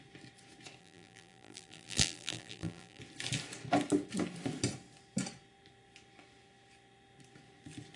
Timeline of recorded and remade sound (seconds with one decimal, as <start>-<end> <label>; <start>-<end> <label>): 0.0-0.8 recorded; 0.8-3.0 remade; 3.0-8.0 recorded